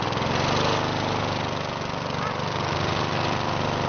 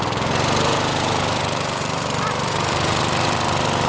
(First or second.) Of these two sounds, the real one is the first